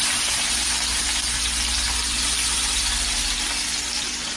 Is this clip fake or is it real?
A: real